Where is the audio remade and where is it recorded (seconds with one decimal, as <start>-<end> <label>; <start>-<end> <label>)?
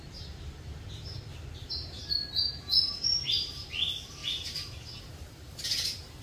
0.0-2.0 remade; 2.0-2.8 recorded; 2.8-4.2 remade; 4.2-5.0 recorded; 5.0-6.2 remade